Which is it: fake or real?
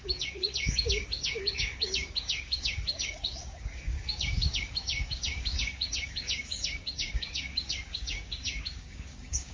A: fake